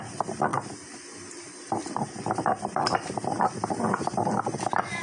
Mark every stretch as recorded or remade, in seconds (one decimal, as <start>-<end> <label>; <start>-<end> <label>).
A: 0.0-5.0 recorded